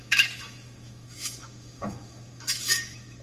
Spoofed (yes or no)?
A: yes